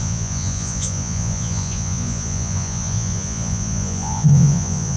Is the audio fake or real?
fake